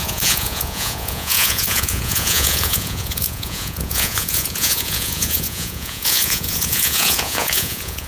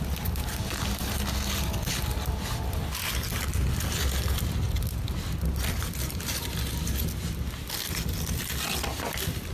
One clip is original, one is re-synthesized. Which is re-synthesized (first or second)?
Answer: first